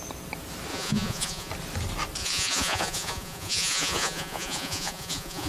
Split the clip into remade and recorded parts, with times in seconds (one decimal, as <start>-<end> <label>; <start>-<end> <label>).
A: 0.0-0.7 recorded; 0.7-1.5 remade; 1.5-2.2 recorded; 2.2-5.5 remade